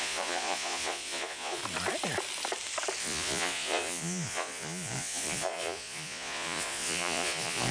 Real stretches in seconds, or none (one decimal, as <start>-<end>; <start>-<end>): 1.6-3.0